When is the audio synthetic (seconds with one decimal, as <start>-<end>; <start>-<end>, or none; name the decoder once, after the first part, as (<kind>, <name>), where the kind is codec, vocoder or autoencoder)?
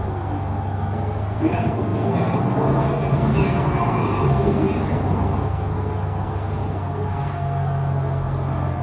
0.0-8.8 (codec, SNAC)